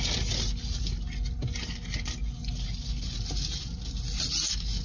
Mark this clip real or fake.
real